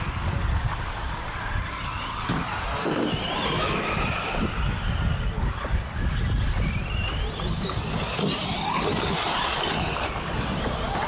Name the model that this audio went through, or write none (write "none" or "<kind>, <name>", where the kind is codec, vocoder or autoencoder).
none